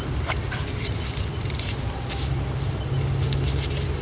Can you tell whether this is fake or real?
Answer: real